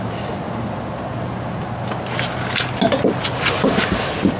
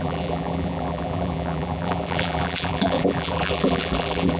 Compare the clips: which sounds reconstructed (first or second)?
second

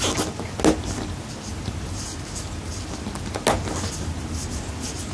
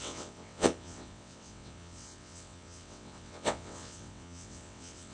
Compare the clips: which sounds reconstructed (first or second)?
second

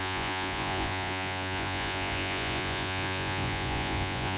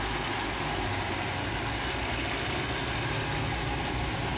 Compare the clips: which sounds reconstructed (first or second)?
first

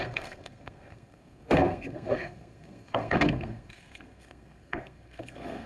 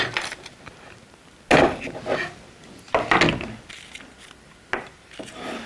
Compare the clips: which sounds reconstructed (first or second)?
first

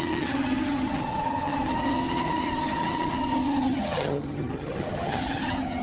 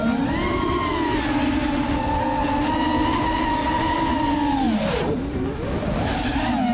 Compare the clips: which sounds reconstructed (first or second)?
first